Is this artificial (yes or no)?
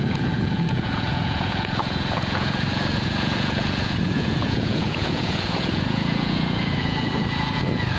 yes